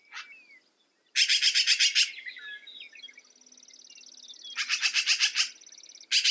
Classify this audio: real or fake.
real